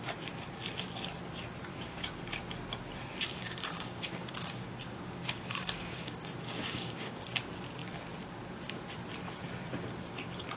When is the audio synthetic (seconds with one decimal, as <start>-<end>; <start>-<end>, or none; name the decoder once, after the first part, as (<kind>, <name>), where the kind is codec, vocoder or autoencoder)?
1.7-2.2 (codec, DAC); 3.3-7.2